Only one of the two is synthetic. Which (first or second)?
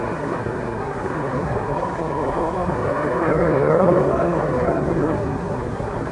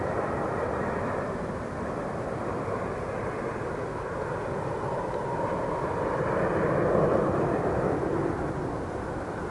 first